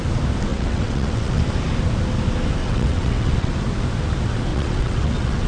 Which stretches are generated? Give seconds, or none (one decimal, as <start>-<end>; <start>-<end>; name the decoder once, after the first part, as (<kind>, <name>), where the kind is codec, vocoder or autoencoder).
0.5-1.4 (vocoder, WaveNeXt); 2.6-3.5; 4.5-5.5